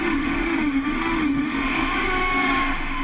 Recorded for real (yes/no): no